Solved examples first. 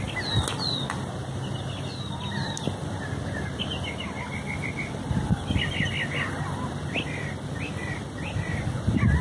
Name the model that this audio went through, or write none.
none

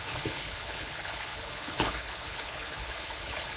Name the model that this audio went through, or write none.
codec, HILCodec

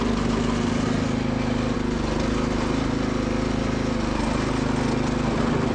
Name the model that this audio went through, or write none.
none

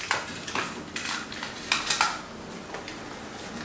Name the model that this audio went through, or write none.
none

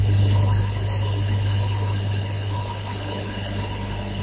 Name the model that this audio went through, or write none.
codec, HILCodec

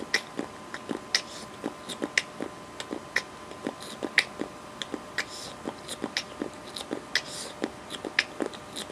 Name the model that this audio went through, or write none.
none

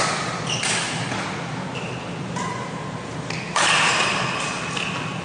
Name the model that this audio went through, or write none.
none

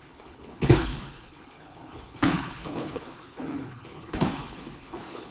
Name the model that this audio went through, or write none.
codec, HILCodec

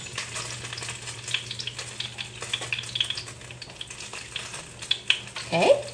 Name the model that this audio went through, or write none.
none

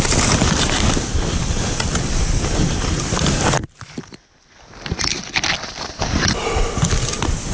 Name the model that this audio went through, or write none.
none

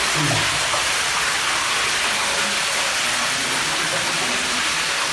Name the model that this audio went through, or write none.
none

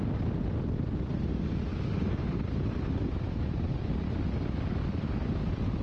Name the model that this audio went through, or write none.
none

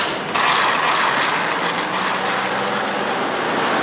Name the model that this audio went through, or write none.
none